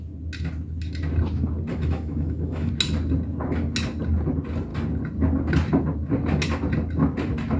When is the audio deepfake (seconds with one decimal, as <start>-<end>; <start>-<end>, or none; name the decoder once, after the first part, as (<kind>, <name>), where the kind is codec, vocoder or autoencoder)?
1.7-2.7 (autoencoder, DAC-VAE)